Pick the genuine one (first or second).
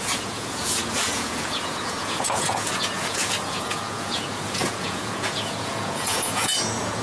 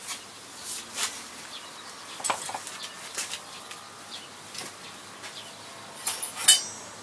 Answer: second